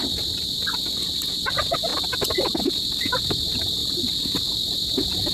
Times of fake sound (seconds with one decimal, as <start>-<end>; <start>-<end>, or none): 3.8-4.4